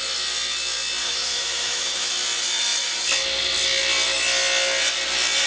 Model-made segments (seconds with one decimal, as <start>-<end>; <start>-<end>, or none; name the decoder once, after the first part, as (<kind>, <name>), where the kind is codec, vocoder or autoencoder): 1.0-2.1 (autoencoder, DAC-VAE)